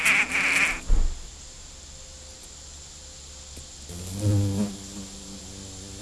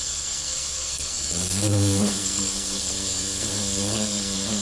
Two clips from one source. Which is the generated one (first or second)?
second